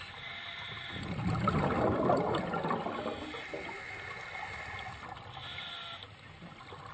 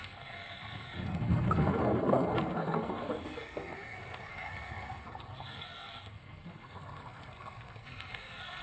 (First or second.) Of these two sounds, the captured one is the first